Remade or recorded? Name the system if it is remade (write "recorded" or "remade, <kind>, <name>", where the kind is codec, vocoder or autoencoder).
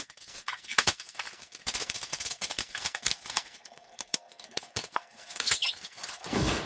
remade, codec, SNAC